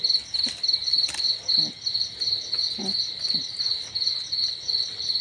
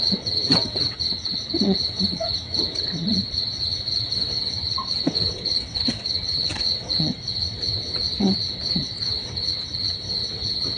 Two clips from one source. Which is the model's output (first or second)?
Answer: second